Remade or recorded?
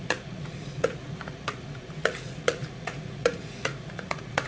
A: remade